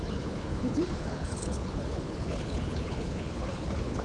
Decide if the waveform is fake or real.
fake